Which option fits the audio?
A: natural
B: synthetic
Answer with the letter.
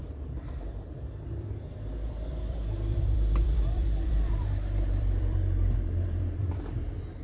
B